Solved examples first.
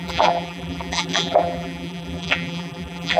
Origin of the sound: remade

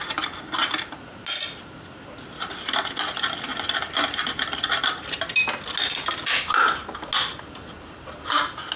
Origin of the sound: recorded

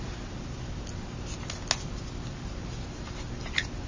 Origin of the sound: recorded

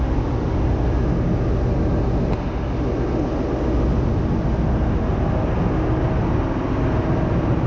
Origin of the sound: recorded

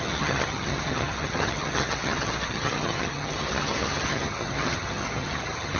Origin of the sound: remade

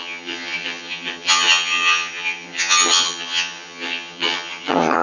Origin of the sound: remade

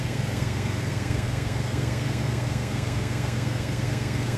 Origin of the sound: remade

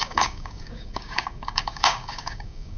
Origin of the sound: remade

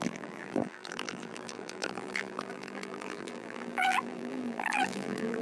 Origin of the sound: remade